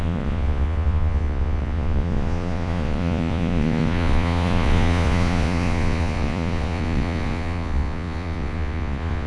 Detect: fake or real fake